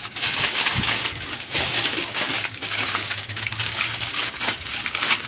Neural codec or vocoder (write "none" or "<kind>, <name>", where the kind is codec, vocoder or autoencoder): codec, DAC